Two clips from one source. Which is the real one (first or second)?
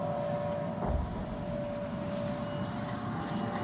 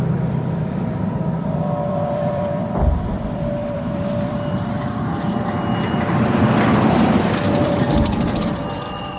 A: first